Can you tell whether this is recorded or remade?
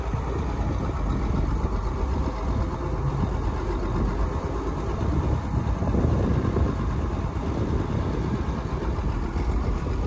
recorded